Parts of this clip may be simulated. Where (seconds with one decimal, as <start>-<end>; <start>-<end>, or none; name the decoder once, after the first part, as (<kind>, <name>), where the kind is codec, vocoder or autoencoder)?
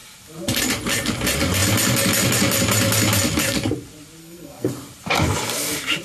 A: 4.2-4.7 (codec, SNAC)